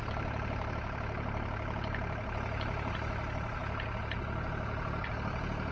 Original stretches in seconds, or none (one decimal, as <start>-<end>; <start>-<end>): 0.0-5.7